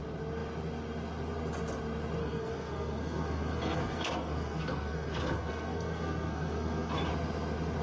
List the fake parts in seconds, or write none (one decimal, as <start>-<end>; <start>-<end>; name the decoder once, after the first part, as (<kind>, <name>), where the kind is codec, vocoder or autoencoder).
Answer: 2.2-6.9 (codec, SNAC)

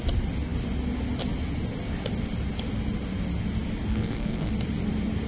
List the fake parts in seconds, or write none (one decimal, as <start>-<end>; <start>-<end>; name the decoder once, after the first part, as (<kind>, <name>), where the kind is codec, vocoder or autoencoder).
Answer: 3.9-4.5 (codec, SNAC)

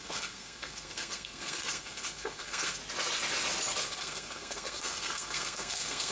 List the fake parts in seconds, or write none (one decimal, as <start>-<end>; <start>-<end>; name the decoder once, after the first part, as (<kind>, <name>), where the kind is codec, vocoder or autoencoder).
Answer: 0.0-2.8 (codec, SNAC); 3.8-6.1

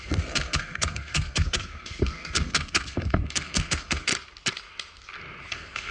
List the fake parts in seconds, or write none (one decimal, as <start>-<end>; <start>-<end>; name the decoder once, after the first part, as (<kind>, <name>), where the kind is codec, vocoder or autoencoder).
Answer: 0.0-4.1 (codec, SNAC); 5.5-5.9

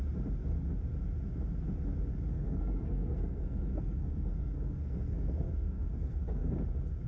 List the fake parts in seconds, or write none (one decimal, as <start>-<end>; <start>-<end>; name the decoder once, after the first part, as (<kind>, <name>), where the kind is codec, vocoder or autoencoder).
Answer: 2.3-6.5 (codec, SNAC)

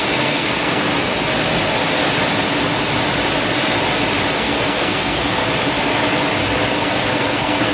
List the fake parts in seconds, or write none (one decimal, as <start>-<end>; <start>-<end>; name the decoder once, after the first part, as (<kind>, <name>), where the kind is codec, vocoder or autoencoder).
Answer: 0.0-0.9 (codec, SNAC); 4.3-5.4; 6.7-7.7

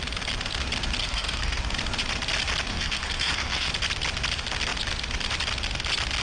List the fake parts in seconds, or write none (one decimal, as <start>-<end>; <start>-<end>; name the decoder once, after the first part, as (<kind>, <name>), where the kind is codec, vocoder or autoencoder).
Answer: 1.0-1.6 (codec, SNAC); 2.7-3.7

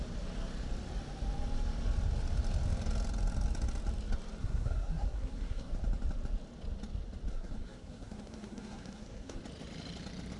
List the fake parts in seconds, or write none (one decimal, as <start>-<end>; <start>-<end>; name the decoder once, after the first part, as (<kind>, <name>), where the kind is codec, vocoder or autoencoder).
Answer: 4.4-5.7 (codec, SNAC); 7.3-9.4